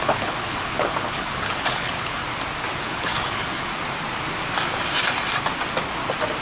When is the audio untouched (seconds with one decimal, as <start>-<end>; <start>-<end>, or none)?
2.2-2.8; 3.7-6.4